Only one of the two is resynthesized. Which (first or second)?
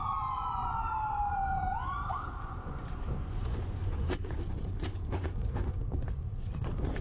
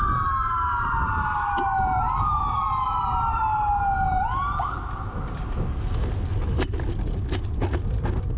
first